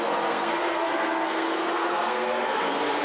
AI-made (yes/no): yes